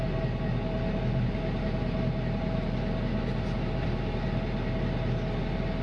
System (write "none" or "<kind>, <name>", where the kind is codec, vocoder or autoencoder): none